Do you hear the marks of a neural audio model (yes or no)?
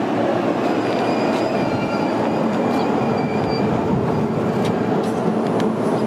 no